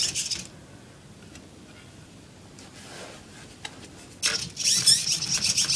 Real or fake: real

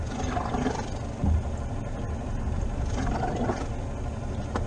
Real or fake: real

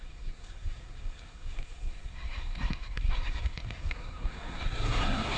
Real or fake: fake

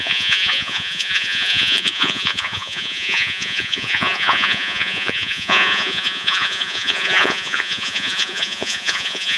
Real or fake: fake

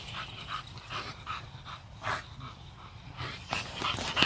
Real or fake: real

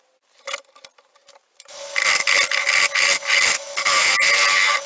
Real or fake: real